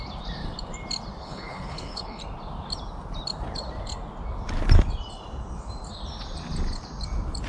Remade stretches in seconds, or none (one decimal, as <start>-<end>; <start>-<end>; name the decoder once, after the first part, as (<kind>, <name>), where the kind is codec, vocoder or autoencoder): 1.2-2.2 (codec, HILCodec)